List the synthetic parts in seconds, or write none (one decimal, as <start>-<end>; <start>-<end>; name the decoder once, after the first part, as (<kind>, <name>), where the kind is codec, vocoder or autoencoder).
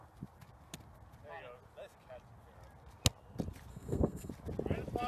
3.7-4.3 (codec, SNAC)